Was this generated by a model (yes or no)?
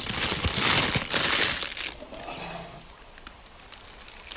no